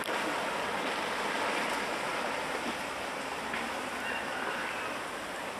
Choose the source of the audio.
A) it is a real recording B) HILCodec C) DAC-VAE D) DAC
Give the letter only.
A